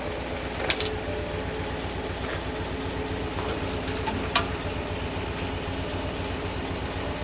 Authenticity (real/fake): real